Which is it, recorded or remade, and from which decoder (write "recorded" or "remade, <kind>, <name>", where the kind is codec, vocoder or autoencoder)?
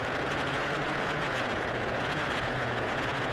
remade, vocoder, Vocos